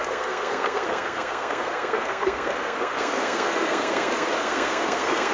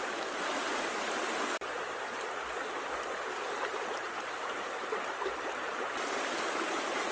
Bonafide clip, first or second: second